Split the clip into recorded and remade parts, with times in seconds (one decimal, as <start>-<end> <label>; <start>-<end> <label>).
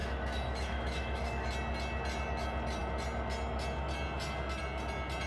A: 0.0-1.5 remade; 1.5-5.3 recorded